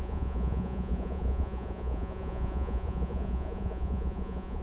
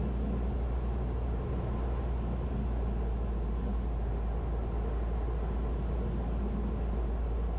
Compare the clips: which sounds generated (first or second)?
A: first